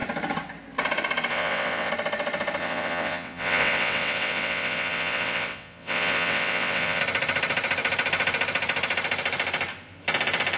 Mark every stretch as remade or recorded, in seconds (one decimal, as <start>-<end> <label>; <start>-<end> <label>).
0.0-1.3 recorded; 1.3-1.9 remade; 1.9-2.6 recorded; 2.6-7.0 remade; 7.0-10.6 recorded